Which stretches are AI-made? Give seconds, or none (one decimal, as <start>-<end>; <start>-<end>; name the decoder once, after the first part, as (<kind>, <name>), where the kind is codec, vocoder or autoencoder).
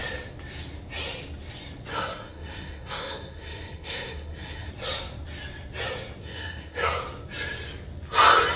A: 1.9-4.7 (codec, SNAC); 6.2-7.0